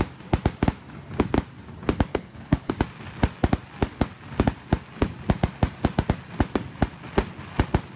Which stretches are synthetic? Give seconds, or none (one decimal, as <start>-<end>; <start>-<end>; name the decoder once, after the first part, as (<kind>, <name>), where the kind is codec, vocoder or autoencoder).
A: 2.1-2.7 (codec, HILCodec)